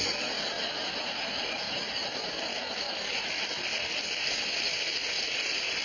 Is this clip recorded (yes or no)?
yes